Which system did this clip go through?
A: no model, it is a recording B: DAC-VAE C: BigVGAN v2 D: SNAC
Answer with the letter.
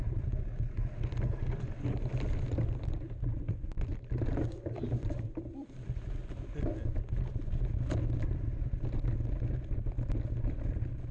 A